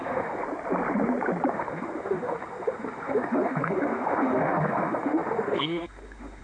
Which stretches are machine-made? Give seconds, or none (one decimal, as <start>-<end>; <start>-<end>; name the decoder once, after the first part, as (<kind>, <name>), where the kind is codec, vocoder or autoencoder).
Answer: 0.0-0.4 (autoencoder, DAC-VAE); 1.5-6.4